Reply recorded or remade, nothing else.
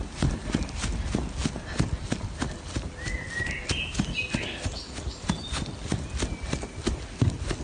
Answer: recorded